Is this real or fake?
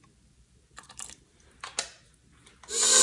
real